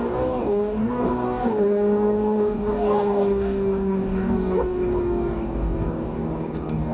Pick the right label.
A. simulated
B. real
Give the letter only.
A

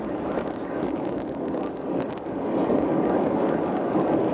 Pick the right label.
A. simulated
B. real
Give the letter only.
A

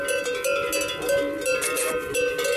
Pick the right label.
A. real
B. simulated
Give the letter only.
A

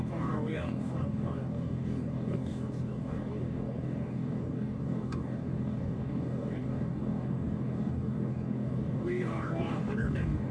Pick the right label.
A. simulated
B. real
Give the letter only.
A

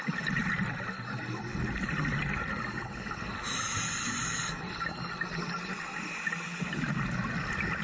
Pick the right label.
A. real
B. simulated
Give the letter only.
A